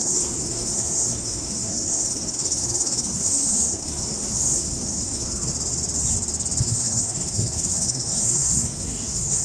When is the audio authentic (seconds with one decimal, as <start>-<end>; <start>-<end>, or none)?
5.5-6.6